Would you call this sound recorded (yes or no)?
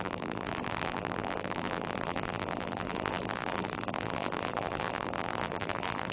no